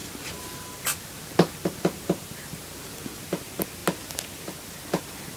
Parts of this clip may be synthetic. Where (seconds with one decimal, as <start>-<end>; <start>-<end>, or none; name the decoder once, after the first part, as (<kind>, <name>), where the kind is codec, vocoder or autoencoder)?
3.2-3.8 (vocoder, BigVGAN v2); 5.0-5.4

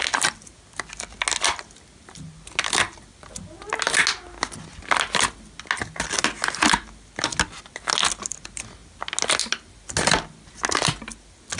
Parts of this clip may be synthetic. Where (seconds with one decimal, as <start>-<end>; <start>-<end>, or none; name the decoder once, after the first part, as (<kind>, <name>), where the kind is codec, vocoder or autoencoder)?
none

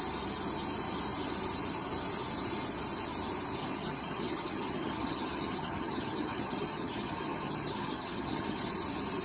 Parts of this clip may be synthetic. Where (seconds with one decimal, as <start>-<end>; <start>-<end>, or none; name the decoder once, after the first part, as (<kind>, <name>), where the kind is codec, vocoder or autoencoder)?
3.6-8.7 (vocoder, HiFi-GAN)

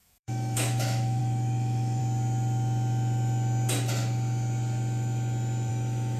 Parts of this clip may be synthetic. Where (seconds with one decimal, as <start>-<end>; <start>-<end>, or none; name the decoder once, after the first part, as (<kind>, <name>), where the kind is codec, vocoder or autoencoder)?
0.0-2.0 (autoencoder, DAC-VAE); 5.7-6.2